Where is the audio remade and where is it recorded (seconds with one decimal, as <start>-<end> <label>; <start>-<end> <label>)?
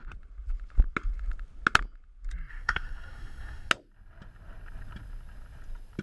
0.0-2.5 recorded; 2.5-3.7 remade; 3.7-6.0 recorded